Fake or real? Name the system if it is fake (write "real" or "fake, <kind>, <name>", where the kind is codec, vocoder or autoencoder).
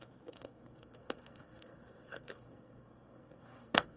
fake, codec, SNAC